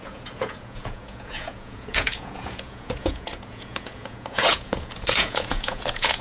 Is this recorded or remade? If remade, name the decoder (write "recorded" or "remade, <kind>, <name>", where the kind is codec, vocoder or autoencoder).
remade, vocoder, Vocos